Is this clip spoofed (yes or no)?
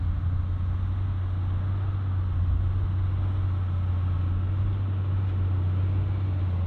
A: no